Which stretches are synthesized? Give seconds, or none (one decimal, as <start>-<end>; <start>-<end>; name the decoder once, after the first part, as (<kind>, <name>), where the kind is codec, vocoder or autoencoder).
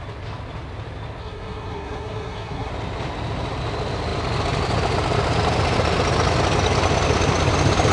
1.2-2.7 (codec, SNAC)